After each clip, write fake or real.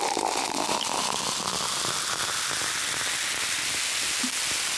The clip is real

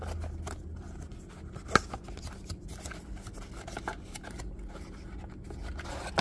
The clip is real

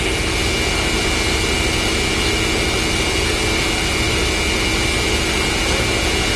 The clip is real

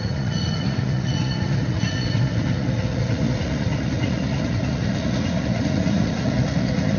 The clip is fake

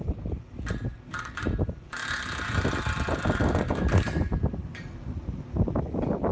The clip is real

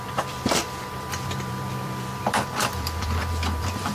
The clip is fake